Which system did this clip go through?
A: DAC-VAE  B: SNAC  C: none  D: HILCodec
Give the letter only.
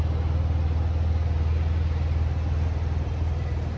C